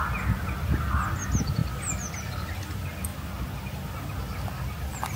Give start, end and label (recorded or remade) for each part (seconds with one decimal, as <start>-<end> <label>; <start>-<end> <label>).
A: 0.0-5.2 recorded